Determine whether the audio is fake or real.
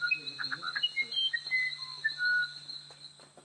real